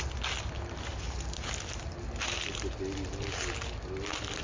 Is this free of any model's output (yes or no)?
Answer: yes